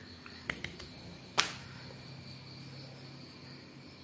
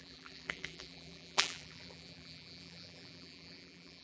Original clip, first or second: first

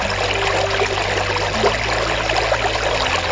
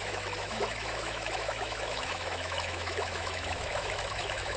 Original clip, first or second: first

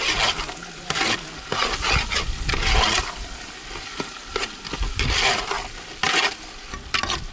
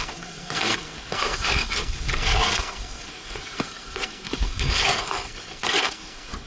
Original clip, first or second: first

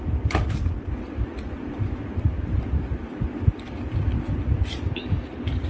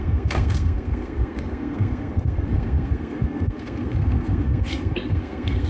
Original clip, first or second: first